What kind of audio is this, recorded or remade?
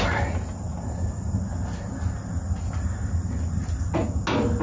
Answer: recorded